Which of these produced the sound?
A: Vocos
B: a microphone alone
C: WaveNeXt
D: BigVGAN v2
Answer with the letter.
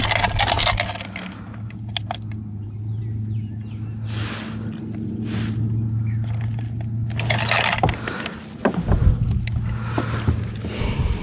B